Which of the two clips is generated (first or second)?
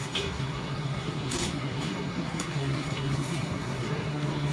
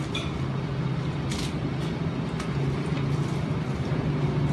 first